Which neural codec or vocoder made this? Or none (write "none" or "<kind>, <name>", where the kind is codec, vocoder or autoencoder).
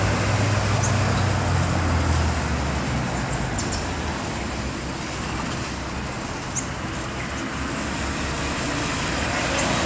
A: none